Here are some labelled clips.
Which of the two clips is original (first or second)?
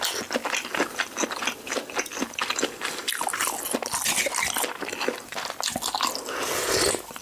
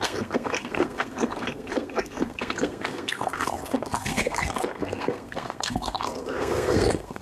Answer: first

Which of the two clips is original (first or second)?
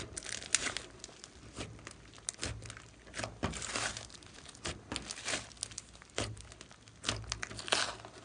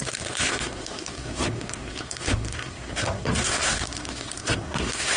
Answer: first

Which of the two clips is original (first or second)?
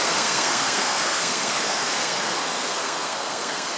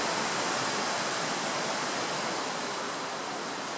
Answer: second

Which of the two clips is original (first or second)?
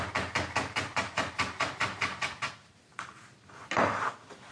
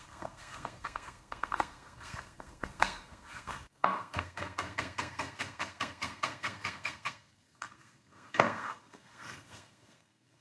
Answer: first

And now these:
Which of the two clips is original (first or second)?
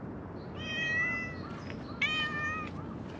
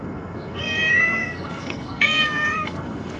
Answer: first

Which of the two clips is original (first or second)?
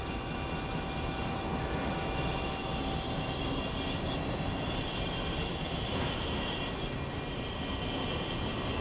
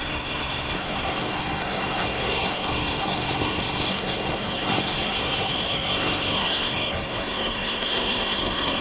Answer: first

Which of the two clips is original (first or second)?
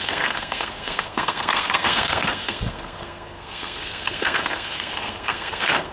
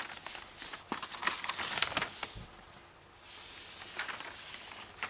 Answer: second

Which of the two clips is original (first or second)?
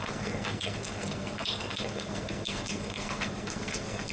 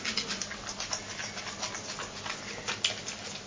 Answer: second